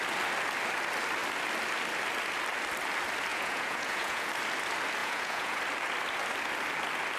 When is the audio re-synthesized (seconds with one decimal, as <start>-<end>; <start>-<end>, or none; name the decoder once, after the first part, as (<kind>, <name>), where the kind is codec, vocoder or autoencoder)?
3.3-4.3 (vocoder, Vocos); 5.0-5.6